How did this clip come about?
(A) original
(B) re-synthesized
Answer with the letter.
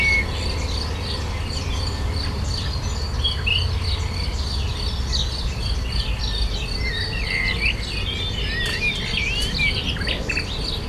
A